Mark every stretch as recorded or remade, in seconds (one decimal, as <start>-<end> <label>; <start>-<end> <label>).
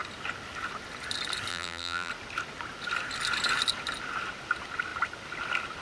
0.0-1.5 recorded; 1.5-2.1 remade; 2.1-5.8 recorded